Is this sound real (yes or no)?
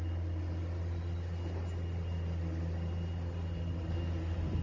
yes